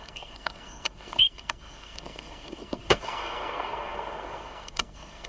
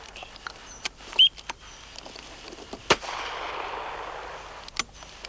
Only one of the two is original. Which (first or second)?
second